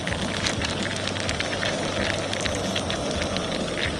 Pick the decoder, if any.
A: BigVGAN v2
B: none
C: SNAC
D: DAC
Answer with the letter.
B